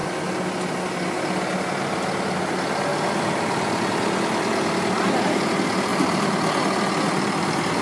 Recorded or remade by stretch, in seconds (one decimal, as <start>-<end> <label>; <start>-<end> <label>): 0.0-2.9 recorded; 2.9-3.8 remade; 3.8-7.8 recorded